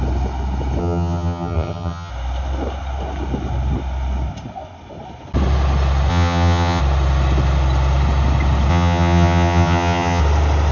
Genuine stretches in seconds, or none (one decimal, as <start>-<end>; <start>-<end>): 0.0-0.8; 2.1-6.1; 6.8-8.7; 10.2-10.7